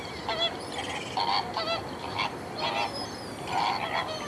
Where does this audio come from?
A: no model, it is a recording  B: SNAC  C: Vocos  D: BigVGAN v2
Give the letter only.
A